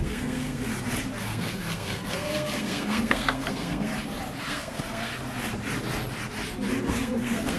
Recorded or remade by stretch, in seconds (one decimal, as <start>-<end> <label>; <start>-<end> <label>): 0.0-0.7 remade; 0.7-1.2 recorded; 1.2-3.9 remade; 3.9-4.4 recorded; 4.4-5.1 remade; 5.1-6.9 recorded; 6.9-7.6 remade